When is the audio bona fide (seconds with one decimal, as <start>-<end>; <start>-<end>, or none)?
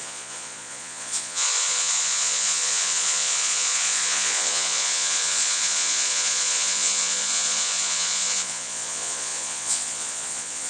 none